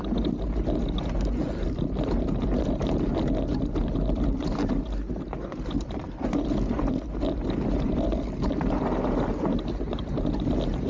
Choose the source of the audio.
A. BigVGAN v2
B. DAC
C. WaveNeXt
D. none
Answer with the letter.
D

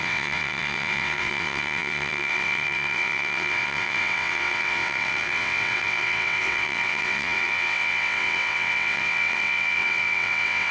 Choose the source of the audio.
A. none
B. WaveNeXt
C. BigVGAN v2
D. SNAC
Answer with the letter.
B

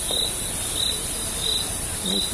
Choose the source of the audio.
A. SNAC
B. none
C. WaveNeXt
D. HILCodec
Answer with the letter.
B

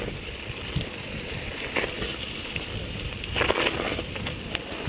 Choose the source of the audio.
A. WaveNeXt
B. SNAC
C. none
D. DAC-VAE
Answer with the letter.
C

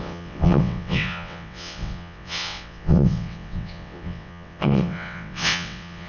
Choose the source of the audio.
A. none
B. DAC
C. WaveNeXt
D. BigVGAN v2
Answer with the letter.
C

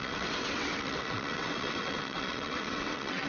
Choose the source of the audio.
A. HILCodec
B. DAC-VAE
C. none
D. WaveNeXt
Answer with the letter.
D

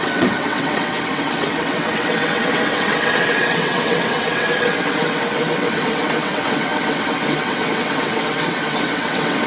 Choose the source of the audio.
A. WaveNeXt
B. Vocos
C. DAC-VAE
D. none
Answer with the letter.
A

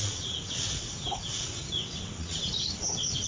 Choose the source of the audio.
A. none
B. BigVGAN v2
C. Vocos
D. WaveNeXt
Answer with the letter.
D